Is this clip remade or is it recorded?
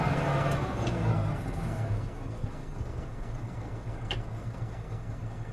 remade